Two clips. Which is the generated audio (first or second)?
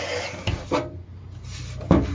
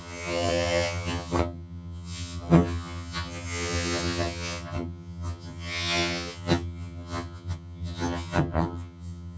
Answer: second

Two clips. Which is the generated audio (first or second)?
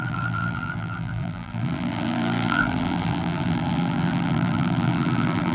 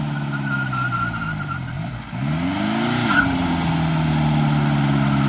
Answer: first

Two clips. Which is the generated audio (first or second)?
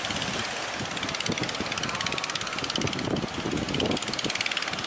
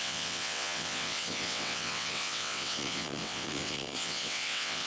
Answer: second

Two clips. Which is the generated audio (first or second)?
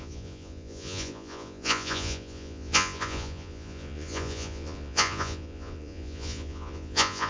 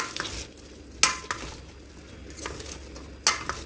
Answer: first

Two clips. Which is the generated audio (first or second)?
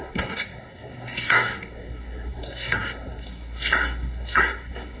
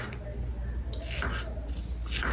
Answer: first